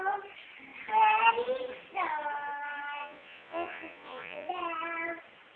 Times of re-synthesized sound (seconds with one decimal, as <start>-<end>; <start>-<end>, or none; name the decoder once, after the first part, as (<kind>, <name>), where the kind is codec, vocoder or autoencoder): 3.0-4.5 (vocoder, Vocos)